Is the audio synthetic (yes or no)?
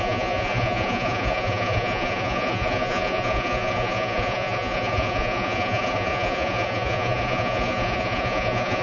yes